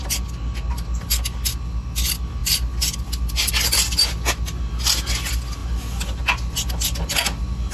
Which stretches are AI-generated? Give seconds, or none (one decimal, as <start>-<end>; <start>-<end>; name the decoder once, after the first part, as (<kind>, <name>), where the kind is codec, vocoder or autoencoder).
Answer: none